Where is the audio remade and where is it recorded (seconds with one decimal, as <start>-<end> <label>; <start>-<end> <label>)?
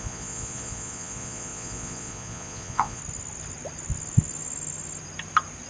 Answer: 0.0-3.0 remade; 3.0-5.7 recorded